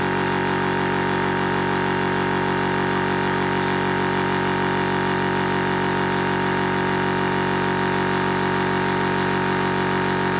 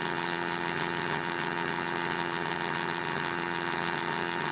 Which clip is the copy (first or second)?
second